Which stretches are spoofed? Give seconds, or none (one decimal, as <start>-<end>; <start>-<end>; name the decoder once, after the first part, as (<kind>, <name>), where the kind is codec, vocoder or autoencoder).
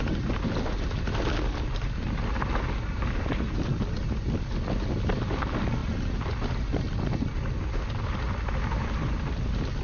none